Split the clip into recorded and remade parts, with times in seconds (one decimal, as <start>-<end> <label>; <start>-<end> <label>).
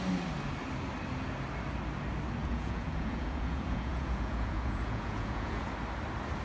0.0-2.4 recorded; 2.4-5.7 remade; 5.7-6.4 recorded